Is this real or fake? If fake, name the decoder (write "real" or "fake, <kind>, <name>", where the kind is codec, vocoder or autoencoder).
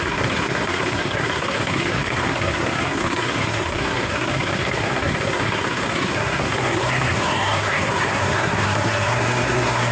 fake, codec, SNAC